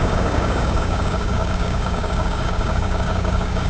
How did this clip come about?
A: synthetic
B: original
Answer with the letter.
A